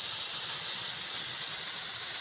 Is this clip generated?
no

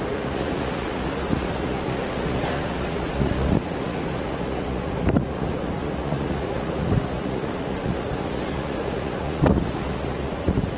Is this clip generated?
yes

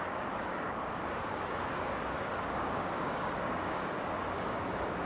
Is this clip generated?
yes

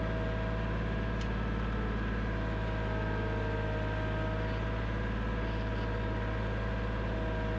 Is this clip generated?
no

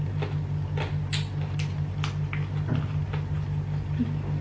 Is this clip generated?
no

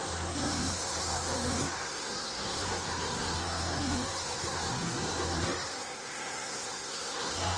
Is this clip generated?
yes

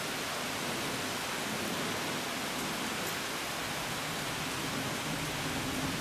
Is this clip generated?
no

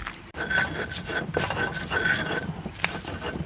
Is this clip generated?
no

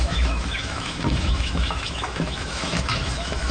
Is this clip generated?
yes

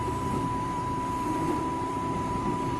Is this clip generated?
yes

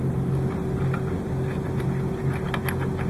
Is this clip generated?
no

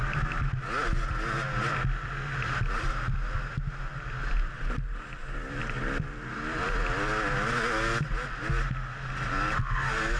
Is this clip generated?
no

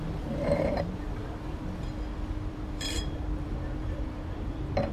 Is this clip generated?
yes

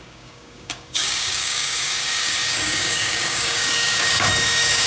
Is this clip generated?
yes